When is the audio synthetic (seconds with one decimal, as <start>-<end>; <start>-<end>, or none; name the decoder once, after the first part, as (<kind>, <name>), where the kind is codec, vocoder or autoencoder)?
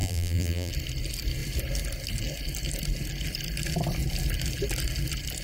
0.0-0.7 (vocoder, BigVGAN v2)